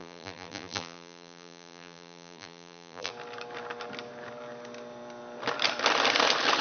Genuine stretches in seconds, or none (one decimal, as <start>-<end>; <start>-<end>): 3.1-6.6